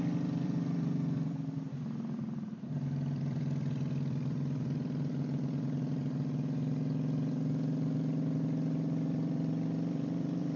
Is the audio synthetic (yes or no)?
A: yes